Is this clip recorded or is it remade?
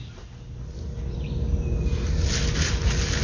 recorded